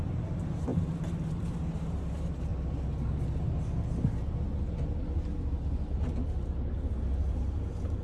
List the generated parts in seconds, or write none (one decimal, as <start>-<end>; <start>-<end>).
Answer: 0.0-2.5; 7.3-8.0